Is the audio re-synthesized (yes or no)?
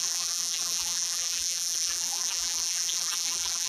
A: yes